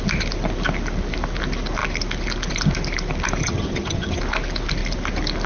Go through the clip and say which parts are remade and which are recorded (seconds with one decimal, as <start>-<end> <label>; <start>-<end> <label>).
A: 0.0-3.4 recorded; 3.4-4.2 remade; 4.2-5.5 recorded